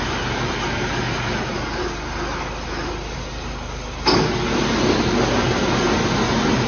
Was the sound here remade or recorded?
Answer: recorded